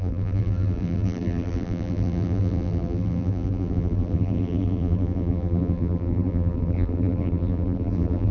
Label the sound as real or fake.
fake